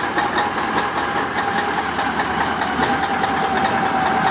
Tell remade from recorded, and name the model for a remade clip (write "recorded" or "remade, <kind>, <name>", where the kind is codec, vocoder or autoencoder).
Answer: recorded